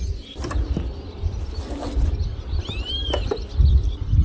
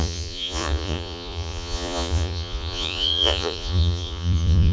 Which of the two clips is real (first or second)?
first